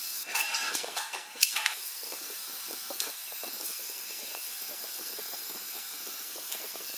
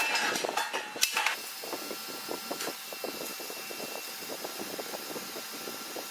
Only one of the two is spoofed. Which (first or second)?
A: first